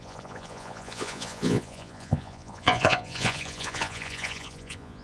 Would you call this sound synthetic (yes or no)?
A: yes